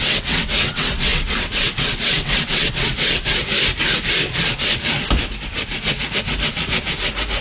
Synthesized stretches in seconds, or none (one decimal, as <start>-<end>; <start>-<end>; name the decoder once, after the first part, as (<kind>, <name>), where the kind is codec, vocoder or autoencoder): 0.0-3.5 (vocoder, WaveNeXt)